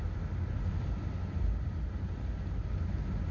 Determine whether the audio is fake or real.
real